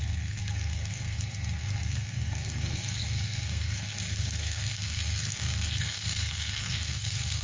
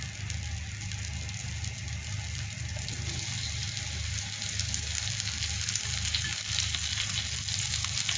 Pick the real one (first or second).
second